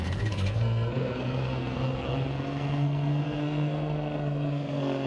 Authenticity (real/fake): fake